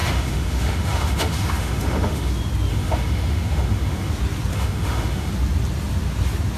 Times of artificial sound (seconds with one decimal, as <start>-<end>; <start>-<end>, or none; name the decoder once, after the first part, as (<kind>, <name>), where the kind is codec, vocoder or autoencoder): 0.0-2.3 (autoencoder, DAC-VAE); 2.7-4.1; 4.5-5.3